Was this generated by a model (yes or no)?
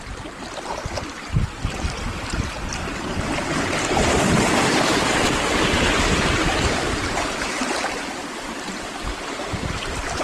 no